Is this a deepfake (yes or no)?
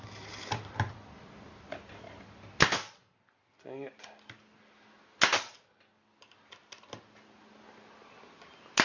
no